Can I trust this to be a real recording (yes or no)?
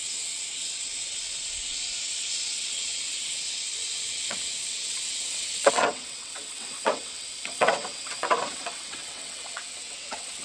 no